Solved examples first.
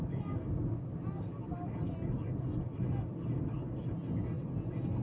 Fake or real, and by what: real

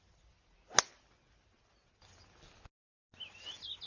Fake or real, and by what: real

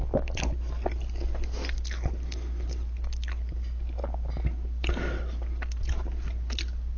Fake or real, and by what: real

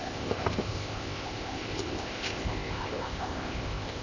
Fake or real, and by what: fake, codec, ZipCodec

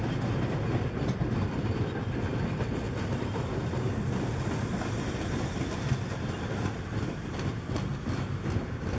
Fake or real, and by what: real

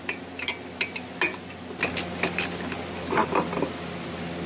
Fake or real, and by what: real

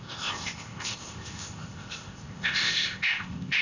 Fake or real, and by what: fake, codec, ZipCodec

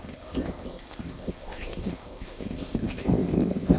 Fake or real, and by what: fake, codec, ZipCodec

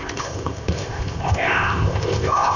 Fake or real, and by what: fake, codec, ZipCodec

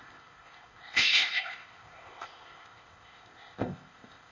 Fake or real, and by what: fake, codec, ZipCodec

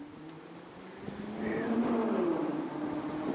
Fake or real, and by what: real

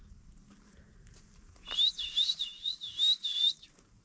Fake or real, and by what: real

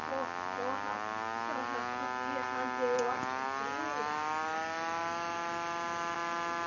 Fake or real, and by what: real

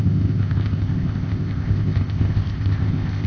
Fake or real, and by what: fake, codec, ZipCodec